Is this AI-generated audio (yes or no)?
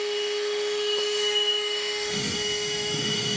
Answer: yes